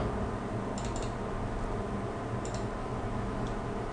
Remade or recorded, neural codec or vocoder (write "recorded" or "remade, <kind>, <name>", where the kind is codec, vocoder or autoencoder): recorded